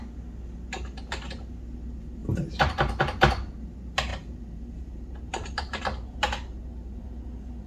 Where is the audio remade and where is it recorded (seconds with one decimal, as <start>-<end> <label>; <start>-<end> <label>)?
0.0-2.2 recorded; 2.2-3.0 remade; 3.0-4.1 recorded; 4.1-5.8 remade; 5.8-7.7 recorded